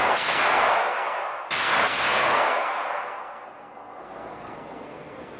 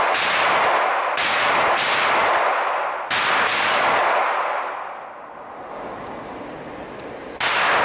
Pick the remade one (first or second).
first